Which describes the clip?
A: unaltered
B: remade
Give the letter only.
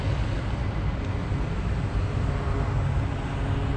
A